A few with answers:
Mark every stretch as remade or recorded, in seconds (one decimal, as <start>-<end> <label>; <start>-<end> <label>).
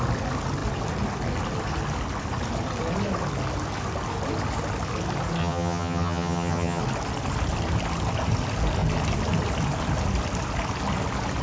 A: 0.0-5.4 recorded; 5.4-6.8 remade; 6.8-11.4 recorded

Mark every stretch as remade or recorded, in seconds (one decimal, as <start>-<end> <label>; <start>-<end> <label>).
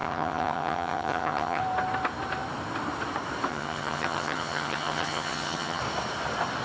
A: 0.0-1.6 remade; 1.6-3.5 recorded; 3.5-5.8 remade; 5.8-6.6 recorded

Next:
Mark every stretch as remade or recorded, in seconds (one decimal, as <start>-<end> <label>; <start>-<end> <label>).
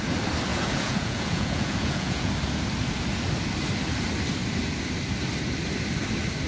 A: 0.0-0.5 recorded; 0.5-2.3 remade; 2.3-6.5 recorded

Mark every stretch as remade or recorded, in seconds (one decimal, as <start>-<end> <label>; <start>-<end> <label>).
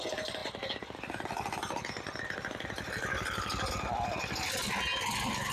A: 0.0-5.5 recorded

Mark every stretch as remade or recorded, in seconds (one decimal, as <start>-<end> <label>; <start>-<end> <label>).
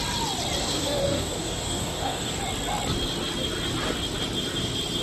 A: 0.0-0.6 recorded; 0.6-2.4 remade; 2.4-5.0 recorded